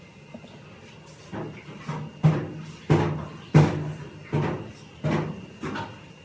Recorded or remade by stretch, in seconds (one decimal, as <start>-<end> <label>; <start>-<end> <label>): 0.0-6.2 recorded